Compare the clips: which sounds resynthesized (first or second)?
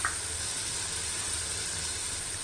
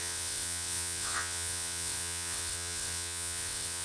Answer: second